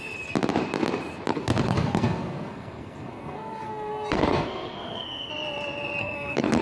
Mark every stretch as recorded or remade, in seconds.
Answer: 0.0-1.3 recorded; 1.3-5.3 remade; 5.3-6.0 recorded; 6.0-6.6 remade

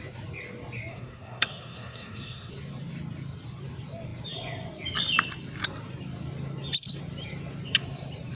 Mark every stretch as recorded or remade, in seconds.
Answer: 0.0-0.9 recorded; 0.9-2.5 remade; 2.5-8.4 recorded

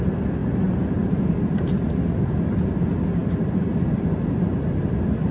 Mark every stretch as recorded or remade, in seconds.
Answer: 0.0-5.3 recorded

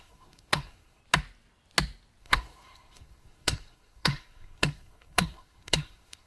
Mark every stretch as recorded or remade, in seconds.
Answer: 0.0-1.0 remade; 1.0-2.2 recorded; 2.2-6.3 remade

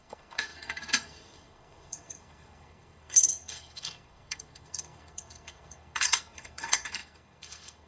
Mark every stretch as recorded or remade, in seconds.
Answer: 0.0-7.9 remade

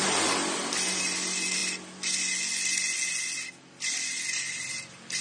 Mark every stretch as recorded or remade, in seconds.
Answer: 0.0-5.2 recorded